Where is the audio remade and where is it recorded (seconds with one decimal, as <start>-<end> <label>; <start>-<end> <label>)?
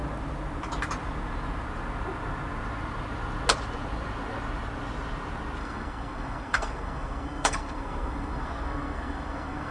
0.0-5.6 recorded; 5.6-9.7 remade